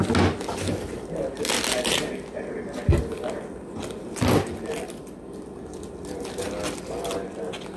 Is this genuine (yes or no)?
yes